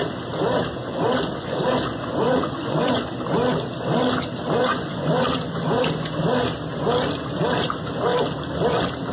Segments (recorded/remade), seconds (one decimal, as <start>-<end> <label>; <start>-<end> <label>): 0.0-0.9 recorded; 0.9-3.0 remade; 3.0-4.7 recorded; 4.7-5.8 remade; 5.8-9.1 recorded